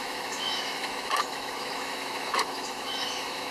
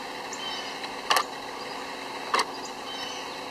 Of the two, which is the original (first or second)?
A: second